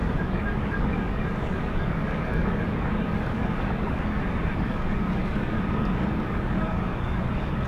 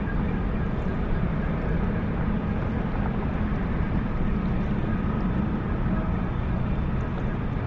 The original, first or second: second